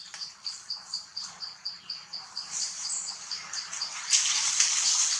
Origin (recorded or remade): remade